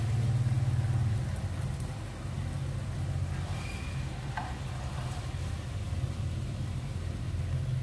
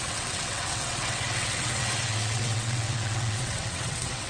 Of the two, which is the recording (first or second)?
first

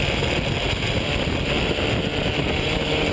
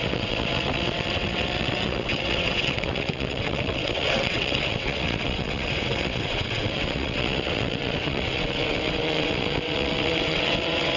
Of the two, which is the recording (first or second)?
first